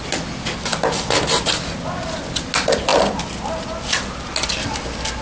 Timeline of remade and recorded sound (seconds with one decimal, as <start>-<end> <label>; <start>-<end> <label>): 0.0-5.2 recorded